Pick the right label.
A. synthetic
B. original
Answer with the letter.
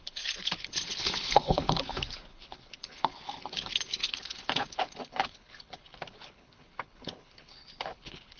A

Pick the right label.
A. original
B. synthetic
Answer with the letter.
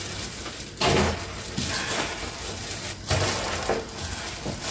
A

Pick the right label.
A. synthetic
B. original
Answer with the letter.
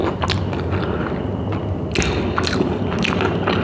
B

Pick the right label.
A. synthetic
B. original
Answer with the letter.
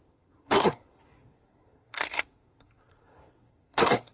A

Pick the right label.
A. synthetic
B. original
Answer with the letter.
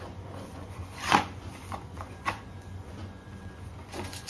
A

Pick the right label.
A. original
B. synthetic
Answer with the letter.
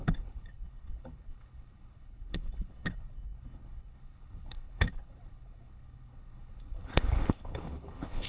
B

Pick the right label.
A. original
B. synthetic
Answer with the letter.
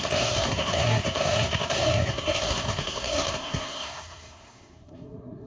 B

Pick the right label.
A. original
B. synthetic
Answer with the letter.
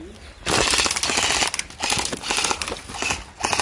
A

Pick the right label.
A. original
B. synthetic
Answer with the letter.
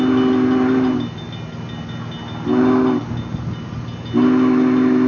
A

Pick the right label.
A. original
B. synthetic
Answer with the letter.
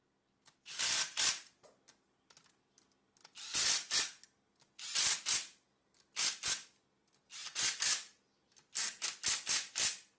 A